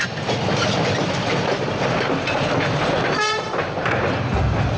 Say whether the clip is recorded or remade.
recorded